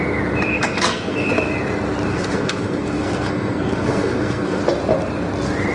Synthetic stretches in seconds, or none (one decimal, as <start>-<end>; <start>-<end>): 0.5-1.3; 2.1-4.6